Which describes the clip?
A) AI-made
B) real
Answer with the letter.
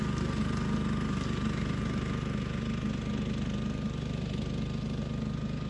B